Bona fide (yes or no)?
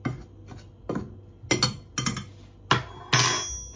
yes